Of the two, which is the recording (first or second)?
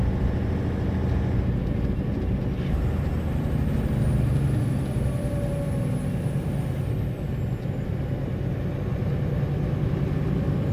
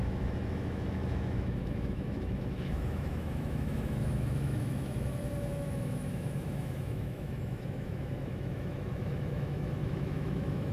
first